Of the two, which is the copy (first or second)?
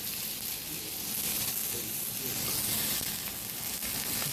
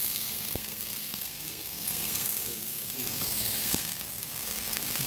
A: second